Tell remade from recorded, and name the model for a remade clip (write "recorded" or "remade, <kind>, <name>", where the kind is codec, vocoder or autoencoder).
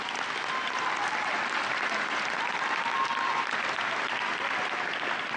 recorded